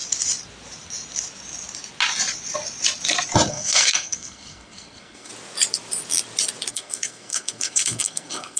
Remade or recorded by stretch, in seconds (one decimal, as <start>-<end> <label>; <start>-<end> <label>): 0.0-3.5 recorded; 3.5-5.3 remade; 5.3-6.7 recorded; 6.7-8.6 remade